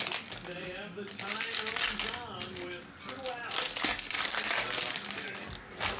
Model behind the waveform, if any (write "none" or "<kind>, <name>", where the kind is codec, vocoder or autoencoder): none